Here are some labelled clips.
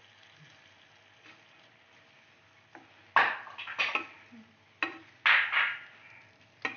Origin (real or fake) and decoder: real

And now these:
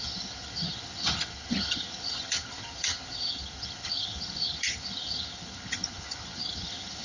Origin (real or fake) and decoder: fake, vocoder, HiFi-GAN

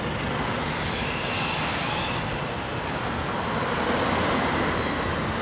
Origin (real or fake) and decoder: real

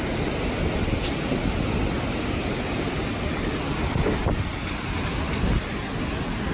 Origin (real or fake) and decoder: real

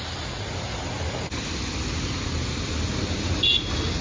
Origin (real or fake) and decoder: real